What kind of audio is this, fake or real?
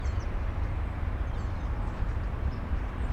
fake